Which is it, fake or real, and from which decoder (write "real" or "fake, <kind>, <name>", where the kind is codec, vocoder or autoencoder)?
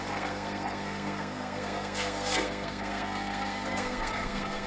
fake, codec, SNAC